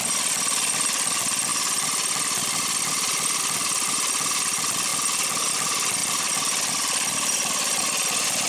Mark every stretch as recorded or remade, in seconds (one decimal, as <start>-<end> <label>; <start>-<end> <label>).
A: 0.0-6.0 recorded; 6.0-8.5 remade